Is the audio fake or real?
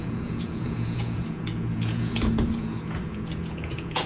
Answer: fake